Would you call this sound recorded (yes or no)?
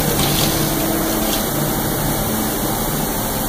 yes